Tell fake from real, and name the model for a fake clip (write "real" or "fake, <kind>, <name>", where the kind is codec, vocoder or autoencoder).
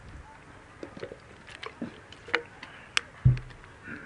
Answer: real